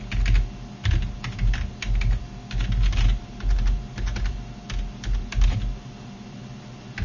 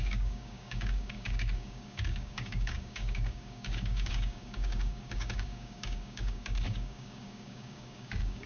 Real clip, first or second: first